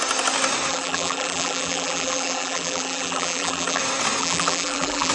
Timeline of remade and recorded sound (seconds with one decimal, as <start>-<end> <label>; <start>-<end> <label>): 0.0-0.7 recorded; 0.7-3.8 remade; 3.8-4.2 recorded; 4.2-5.1 remade